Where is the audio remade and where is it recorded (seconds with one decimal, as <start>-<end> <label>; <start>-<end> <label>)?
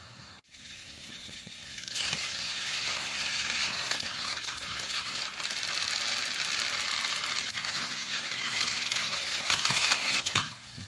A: 0.0-5.2 remade; 5.2-7.5 recorded; 7.5-10.9 remade